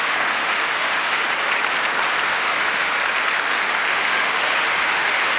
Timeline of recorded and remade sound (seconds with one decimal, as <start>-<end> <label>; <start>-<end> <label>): 0.0-1.2 remade; 1.2-2.2 recorded; 2.2-3.0 remade; 3.0-3.9 recorded; 3.9-5.4 remade